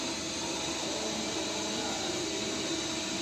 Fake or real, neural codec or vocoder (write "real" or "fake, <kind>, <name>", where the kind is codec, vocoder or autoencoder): real